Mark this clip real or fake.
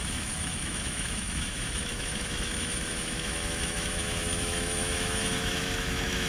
fake